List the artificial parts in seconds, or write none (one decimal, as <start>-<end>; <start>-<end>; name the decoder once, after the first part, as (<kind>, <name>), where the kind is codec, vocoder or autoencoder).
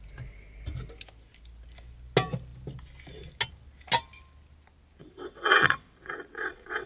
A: 5.0-6.9 (vocoder, WaveNeXt)